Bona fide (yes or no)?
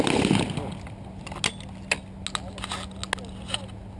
yes